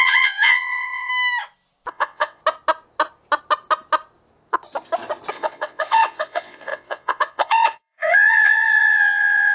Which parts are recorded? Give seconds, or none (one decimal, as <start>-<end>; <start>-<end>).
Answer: 1.1-1.9; 2.4-5.3